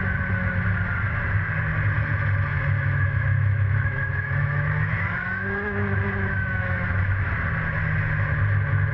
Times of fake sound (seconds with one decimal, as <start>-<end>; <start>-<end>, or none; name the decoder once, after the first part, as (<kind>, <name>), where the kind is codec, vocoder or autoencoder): 2.5-7.3 (autoencoder, DAC-VAE)